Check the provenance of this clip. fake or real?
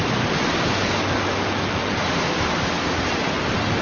real